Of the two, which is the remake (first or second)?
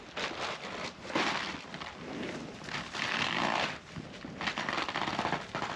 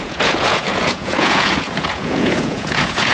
second